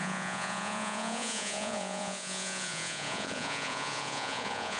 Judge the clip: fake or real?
fake